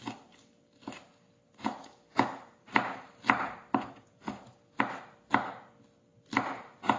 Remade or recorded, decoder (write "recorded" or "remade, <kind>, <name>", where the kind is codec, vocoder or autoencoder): recorded